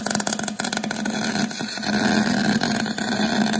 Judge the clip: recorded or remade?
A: recorded